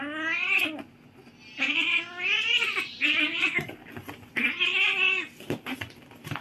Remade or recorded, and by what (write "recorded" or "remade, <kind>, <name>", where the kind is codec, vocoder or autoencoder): recorded